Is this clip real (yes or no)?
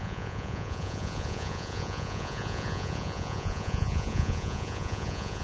no